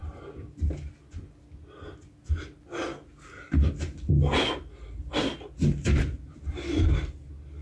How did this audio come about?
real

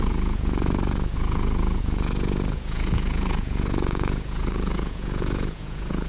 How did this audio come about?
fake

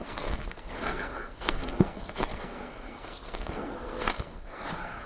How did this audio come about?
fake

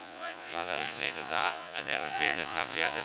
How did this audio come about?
fake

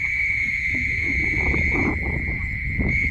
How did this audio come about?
fake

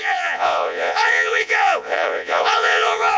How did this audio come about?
fake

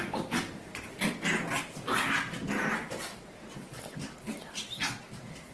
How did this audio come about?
real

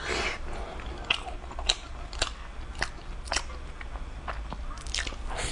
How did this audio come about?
real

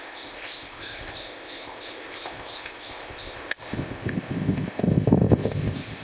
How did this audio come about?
fake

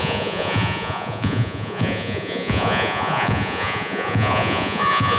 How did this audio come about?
fake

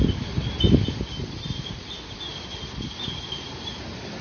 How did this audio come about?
real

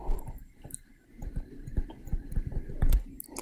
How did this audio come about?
real